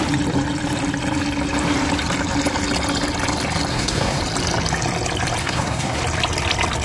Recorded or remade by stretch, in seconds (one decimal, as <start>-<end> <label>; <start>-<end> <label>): 0.0-3.7 recorded; 3.7-4.2 remade; 4.2-5.4 recorded; 5.4-6.0 remade; 6.0-6.8 recorded